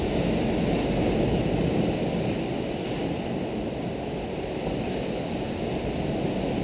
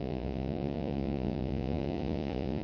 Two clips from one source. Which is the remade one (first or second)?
second